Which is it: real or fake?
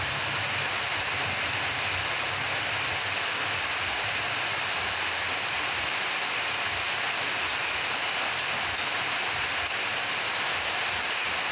fake